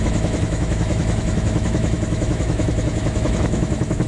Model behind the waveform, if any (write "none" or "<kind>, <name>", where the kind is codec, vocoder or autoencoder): autoencoder, DAC-VAE